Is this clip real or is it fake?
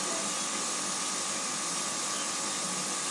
real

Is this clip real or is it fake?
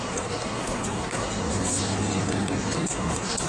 fake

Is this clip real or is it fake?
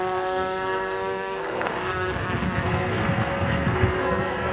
fake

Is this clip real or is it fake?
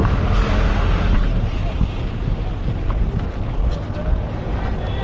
real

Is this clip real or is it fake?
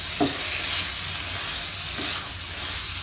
real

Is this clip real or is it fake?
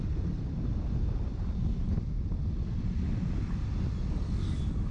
real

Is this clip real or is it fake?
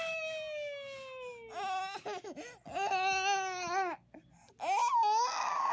real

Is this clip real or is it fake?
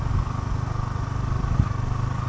real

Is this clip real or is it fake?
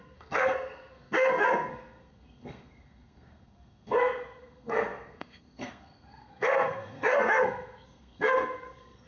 fake